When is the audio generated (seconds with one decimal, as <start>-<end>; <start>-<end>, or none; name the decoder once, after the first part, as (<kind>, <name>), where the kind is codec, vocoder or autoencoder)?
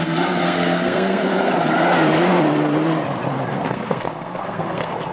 0.0-1.2 (codec, SNAC); 3.5-5.1